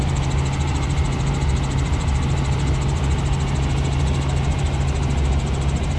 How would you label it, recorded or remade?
recorded